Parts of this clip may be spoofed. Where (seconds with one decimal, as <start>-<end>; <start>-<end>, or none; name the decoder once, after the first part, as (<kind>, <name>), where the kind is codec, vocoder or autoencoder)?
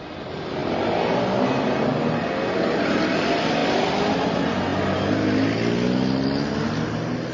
none